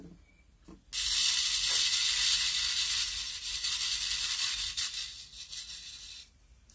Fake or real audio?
real